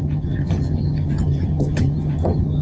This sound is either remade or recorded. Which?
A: remade